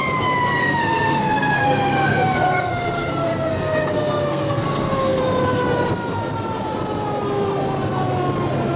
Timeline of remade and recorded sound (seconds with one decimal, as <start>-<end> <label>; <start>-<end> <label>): 0.0-0.6 recorded; 0.6-5.2 remade; 5.2-8.8 recorded